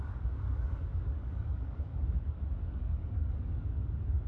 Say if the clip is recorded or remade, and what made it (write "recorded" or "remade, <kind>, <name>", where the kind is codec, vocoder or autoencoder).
remade, codec, DAC